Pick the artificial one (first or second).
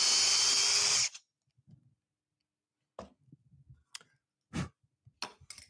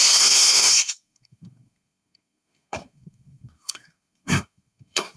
second